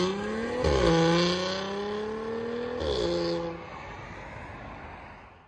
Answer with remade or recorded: recorded